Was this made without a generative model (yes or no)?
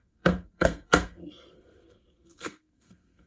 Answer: no